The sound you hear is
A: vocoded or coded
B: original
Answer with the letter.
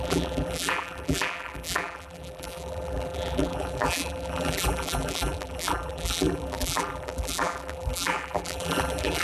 A